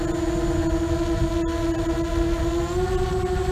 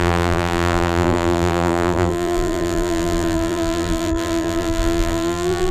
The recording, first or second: first